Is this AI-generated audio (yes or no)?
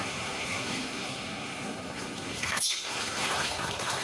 yes